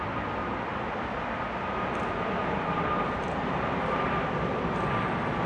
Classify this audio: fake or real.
real